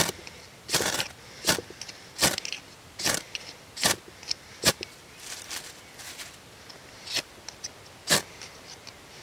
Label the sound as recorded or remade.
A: remade